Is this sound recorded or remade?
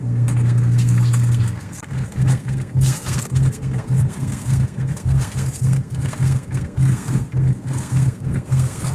remade